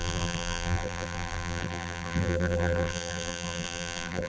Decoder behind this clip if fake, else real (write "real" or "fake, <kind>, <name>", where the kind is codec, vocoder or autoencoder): fake, vocoder, BigVGAN v2